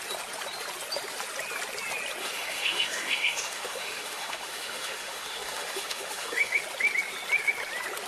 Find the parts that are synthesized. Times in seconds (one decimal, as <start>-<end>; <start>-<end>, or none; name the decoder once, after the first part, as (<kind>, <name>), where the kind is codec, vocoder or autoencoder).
2.2-6.6 (autoencoder, DAC-VAE)